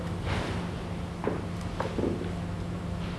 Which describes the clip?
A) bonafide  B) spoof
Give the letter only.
A